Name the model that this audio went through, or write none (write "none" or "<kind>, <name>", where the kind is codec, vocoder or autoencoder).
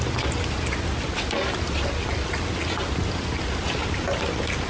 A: none